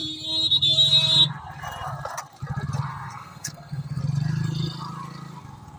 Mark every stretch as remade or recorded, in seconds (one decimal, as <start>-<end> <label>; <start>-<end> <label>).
0.0-2.9 recorded; 2.9-4.0 remade; 4.0-5.8 recorded